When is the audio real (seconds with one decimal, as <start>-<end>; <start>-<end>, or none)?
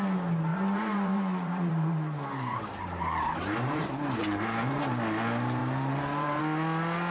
0.0-0.5; 4.8-5.6; 6.4-7.1